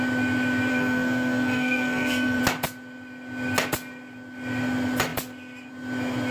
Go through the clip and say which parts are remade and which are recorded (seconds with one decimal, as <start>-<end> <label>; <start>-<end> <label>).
0.0-0.7 recorded; 0.7-2.4 remade; 2.4-6.3 recorded